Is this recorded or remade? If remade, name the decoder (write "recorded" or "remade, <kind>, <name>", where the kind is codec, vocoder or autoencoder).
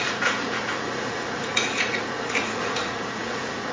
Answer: remade, vocoder, Vocos